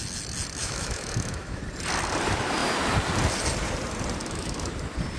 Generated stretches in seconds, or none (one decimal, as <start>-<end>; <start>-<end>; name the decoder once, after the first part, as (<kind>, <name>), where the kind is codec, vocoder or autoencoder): 0.6-1.6 (autoencoder, DAC-VAE); 4.2-4.7